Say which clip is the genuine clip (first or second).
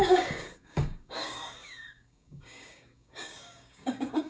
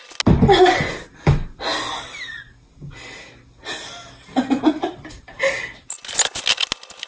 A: second